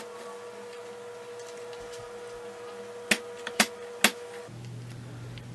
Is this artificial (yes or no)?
no